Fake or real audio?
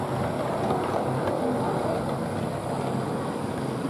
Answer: real